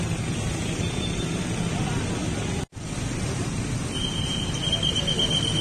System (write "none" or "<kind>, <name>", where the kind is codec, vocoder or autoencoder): none